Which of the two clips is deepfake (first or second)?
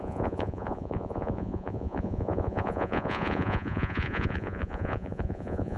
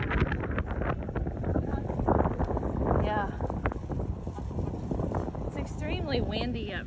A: first